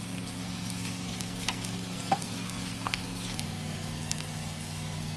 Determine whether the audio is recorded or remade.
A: remade